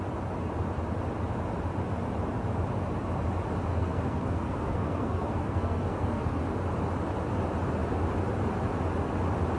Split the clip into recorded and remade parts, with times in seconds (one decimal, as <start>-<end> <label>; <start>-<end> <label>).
0.0-3.7 recorded; 3.7-6.4 remade; 6.4-9.6 recorded